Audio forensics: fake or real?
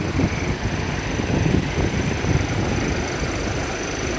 real